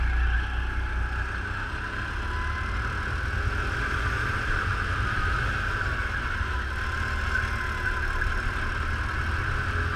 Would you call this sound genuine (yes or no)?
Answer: yes